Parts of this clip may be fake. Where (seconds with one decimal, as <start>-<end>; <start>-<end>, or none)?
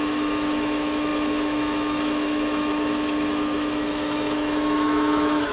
0.0-5.5